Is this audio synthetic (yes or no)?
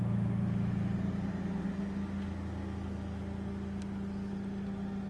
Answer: no